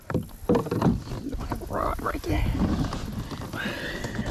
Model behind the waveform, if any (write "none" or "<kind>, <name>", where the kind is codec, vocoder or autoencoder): none